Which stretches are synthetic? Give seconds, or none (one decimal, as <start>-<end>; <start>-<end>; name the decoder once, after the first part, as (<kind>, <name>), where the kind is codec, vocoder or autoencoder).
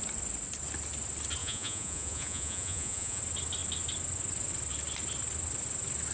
1.4-3.2 (vocoder, Vocos)